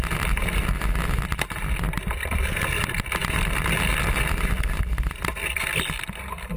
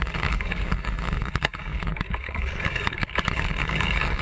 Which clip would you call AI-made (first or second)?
second